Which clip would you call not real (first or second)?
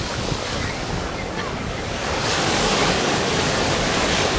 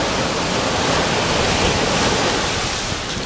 first